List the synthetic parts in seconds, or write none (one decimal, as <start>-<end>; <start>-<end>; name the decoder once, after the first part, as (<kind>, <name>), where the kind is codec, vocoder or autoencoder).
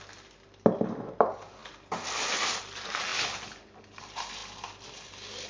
none